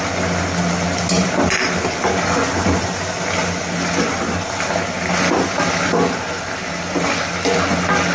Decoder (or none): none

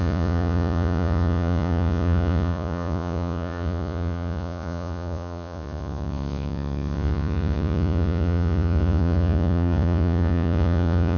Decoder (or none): vocoder, Vocos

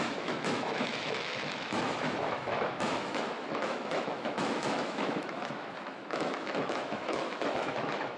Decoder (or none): autoencoder, DAC-VAE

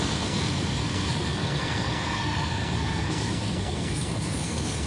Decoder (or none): codec, SNAC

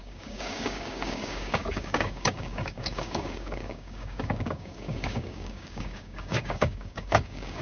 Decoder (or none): codec, DAC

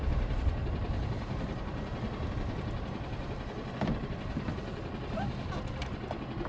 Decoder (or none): none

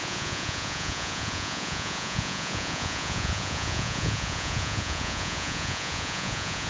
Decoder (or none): vocoder, Vocos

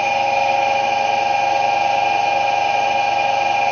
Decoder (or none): none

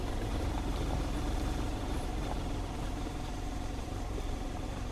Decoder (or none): vocoder, BigVGAN v2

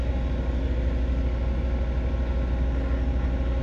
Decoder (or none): none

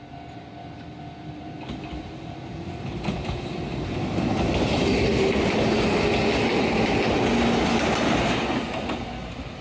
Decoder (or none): none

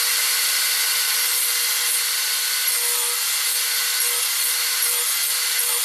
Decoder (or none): none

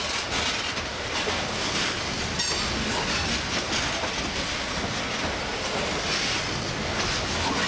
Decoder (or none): none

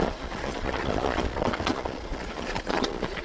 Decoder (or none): vocoder, Vocos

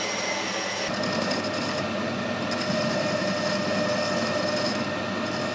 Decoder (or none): none